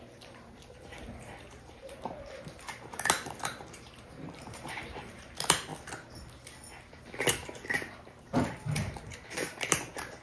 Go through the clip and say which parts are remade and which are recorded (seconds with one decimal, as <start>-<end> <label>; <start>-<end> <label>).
0.0-5.7 remade; 5.7-7.3 recorded; 7.3-10.2 remade